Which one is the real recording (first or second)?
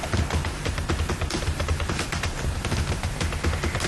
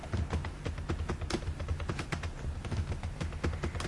second